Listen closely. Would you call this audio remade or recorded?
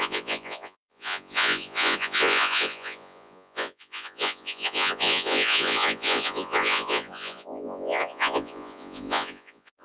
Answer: remade